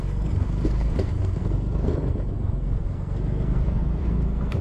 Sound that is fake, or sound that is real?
fake